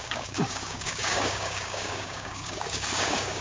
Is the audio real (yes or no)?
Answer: no